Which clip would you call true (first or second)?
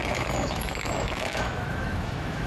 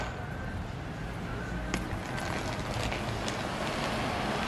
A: second